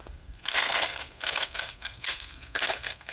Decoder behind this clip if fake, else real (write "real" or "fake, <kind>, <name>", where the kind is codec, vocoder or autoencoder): fake, codec, SNAC